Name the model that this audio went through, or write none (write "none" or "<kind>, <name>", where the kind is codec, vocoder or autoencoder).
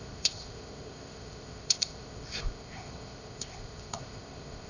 codec, ZipCodec